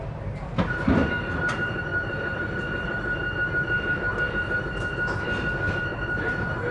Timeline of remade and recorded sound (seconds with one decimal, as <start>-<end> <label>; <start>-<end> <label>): 0.0-6.7 recorded